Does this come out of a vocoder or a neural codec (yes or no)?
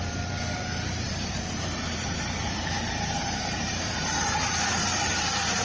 yes